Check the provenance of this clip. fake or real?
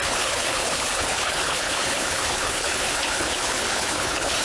fake